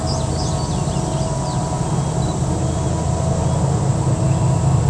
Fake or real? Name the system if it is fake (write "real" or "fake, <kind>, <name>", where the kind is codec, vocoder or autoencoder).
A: real